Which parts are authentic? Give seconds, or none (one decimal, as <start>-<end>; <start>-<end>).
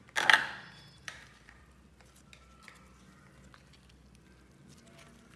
0.0-1.0; 1.6-5.4